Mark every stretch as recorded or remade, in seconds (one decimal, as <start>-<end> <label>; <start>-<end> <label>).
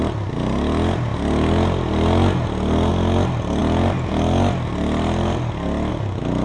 0.0-6.4 recorded